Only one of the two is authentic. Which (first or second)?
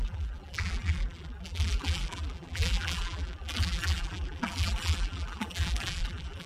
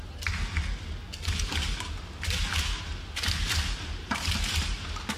second